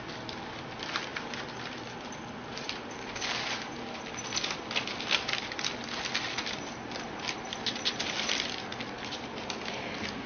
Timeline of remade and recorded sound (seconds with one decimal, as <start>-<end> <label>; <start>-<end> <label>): 0.0-10.3 recorded